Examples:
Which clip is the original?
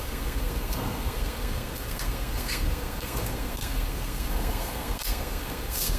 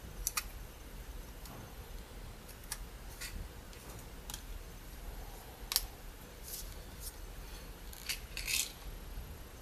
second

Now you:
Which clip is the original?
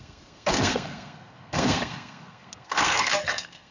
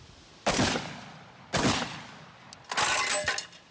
second